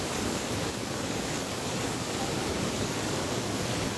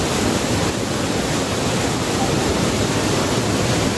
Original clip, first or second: second